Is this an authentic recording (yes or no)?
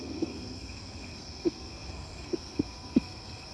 no